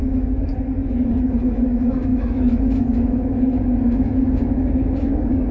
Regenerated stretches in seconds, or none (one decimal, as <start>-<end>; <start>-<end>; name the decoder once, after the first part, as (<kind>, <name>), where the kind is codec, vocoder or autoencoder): 0.0-0.5 (autoencoder, DAC-VAE); 1.4-5.5